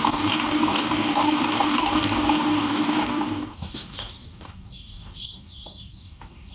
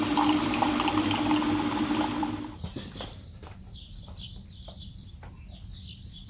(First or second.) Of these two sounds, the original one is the second